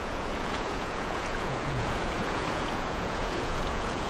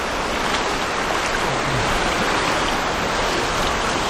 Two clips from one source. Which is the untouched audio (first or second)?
second